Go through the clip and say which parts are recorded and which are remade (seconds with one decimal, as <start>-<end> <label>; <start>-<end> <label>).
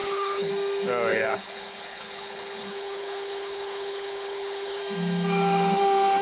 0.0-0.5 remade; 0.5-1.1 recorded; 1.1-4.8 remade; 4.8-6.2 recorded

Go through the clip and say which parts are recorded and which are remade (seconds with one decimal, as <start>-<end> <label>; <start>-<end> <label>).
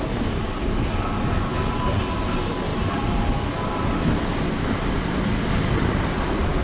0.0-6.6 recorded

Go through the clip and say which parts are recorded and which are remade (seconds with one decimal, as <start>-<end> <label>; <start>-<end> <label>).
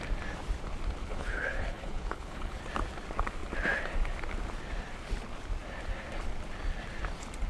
0.0-1.0 recorded; 1.0-2.6 remade; 2.6-7.5 recorded